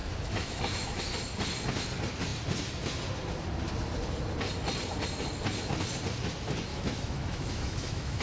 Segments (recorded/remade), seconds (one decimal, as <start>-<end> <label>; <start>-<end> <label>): 0.0-1.0 remade; 1.0-6.7 recorded; 6.7-8.2 remade